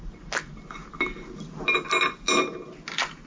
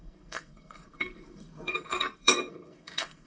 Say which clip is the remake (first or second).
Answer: second